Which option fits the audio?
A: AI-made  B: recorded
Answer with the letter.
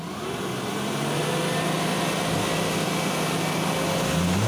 B